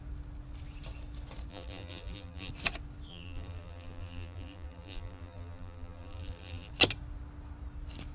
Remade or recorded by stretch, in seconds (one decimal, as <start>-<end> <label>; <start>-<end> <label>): 0.0-1.5 recorded; 1.5-2.5 remade; 2.5-3.1 recorded; 3.1-6.7 remade; 6.7-8.1 recorded

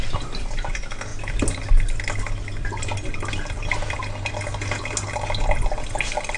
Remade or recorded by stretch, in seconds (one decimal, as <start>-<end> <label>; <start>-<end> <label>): 0.0-6.4 recorded